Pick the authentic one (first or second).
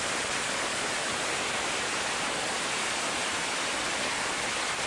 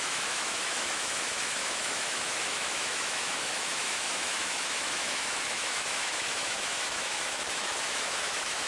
first